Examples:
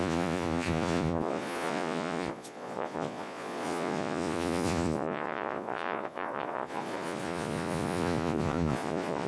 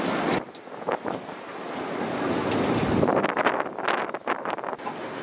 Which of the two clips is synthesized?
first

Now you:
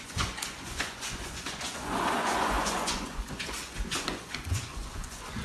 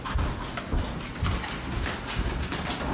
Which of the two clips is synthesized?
first